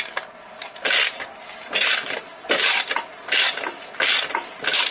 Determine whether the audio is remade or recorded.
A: recorded